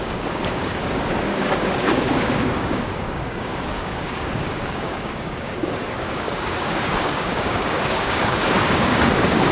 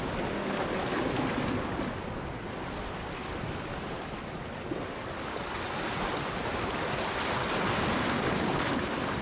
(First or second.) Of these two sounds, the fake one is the first